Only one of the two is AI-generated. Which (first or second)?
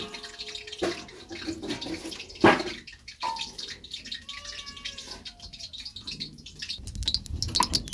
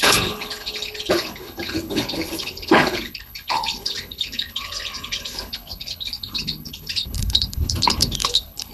second